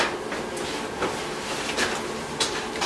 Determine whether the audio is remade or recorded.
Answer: recorded